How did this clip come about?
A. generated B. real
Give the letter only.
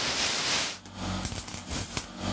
B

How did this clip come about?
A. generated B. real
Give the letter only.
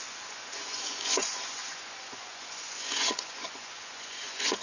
A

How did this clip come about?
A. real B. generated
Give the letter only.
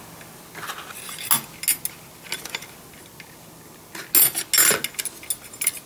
A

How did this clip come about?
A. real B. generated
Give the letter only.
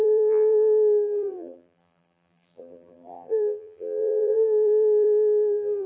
B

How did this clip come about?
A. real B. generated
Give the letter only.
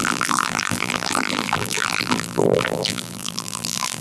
B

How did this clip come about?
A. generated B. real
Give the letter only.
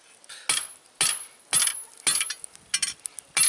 B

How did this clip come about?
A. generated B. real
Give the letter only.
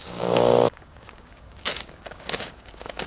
A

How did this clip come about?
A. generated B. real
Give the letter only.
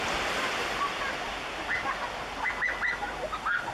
B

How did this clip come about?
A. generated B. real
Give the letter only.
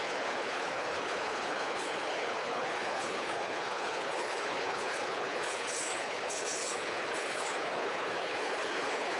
A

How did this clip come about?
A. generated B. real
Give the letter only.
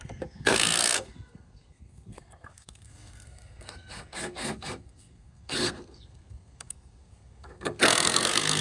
A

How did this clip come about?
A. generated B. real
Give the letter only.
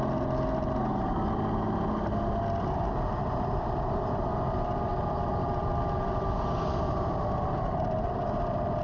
B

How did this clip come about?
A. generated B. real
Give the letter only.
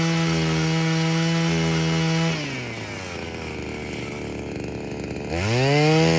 B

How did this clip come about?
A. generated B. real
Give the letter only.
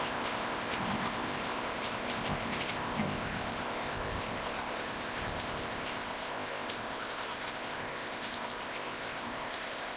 A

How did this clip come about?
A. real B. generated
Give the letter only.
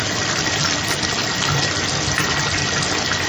A